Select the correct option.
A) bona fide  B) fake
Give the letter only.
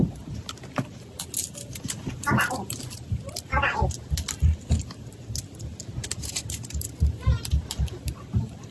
A